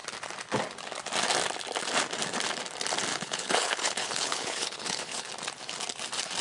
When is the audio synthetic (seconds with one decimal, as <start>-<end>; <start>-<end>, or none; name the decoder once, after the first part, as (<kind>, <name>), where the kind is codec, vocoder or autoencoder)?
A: 3.1-5.3 (codec, HILCodec)